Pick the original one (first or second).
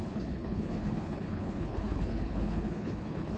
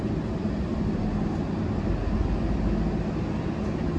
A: second